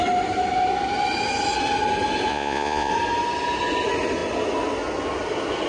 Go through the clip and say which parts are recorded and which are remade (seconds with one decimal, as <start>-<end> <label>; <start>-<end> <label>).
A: 0.0-2.3 recorded; 2.3-2.9 remade; 2.9-5.7 recorded